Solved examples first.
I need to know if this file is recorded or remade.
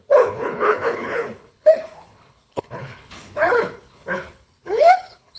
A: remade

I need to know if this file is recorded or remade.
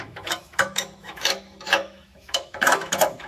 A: remade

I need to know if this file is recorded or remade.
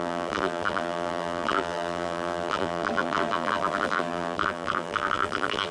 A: remade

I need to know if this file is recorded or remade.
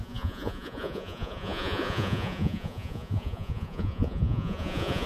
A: remade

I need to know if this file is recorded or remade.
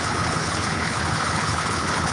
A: remade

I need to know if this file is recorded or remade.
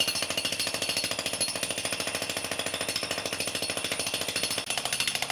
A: recorded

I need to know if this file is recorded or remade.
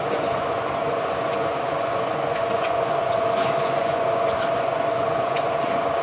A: remade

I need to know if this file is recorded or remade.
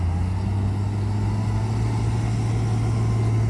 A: recorded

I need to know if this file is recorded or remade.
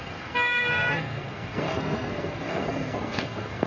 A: remade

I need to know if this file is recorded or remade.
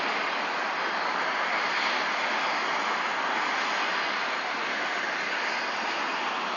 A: recorded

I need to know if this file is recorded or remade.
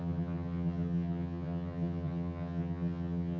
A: remade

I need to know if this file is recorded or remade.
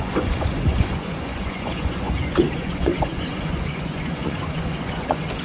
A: remade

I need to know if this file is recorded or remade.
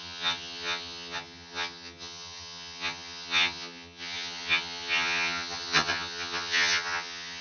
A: remade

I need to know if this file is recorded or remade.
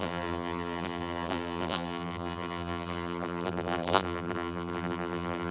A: remade